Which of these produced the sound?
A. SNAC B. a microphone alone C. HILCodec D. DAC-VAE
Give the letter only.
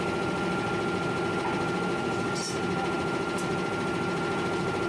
B